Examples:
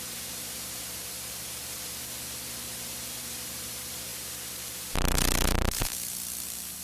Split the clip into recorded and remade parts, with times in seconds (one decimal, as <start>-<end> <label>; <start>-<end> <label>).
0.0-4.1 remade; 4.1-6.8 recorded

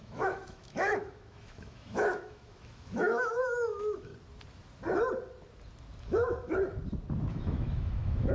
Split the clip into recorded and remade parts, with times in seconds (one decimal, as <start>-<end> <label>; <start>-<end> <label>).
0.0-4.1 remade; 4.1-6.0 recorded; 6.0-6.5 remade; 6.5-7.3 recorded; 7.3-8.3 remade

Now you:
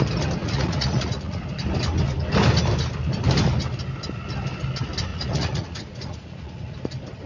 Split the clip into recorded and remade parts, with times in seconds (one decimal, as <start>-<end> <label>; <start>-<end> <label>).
0.0-0.4 recorded; 0.4-1.4 remade; 1.4-5.1 recorded; 5.1-6.8 remade; 6.8-7.3 recorded